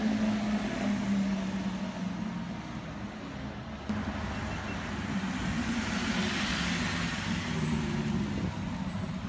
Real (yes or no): yes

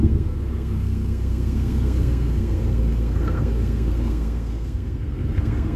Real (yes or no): no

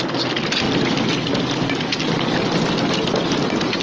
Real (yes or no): yes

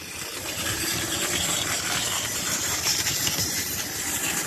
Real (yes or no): no